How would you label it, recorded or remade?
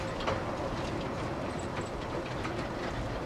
recorded